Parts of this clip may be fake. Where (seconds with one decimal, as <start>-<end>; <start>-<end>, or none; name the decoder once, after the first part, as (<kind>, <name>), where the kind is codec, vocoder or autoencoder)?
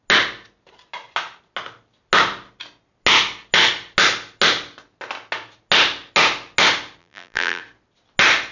7.0-7.6 (vocoder, BigVGAN v2)